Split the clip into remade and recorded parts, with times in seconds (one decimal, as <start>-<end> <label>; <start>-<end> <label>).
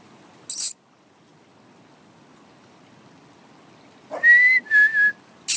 0.0-5.6 recorded